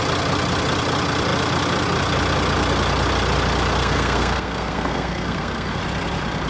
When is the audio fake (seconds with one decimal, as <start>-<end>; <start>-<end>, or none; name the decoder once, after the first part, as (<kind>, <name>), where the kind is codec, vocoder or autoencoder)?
3.8-5.8 (codec, SNAC)